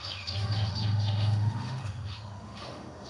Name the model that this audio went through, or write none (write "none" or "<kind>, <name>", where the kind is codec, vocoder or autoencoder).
autoencoder, DAC-VAE